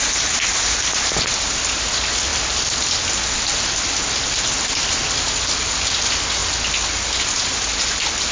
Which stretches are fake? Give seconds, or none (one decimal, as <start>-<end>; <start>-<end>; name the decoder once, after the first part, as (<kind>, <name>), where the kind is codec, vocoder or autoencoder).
none